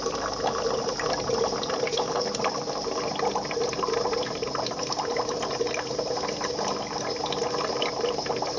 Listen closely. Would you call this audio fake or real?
real